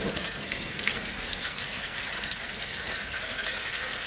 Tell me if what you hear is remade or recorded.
remade